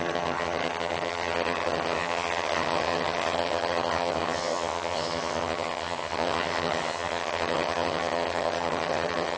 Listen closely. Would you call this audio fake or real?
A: fake